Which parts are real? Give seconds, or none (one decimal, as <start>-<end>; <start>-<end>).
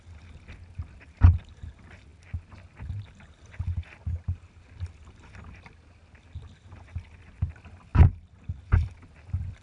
0.0-9.6